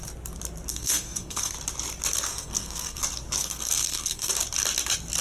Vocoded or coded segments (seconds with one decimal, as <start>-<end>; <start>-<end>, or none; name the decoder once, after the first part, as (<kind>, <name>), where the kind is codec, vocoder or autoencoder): 0.7-1.5 (codec, SNAC); 2.3-3.0; 3.4-4.3